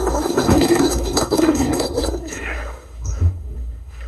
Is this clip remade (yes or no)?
yes